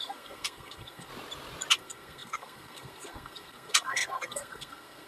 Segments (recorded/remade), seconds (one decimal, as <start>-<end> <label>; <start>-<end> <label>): 0.0-1.1 remade; 1.1-1.7 recorded; 1.7-5.1 remade